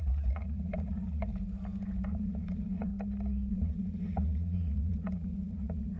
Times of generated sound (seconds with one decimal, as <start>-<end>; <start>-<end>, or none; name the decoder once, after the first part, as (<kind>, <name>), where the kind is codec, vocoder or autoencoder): 0.0-1.3 (vocoder, Vocos); 2.1-2.9; 3.5-6.0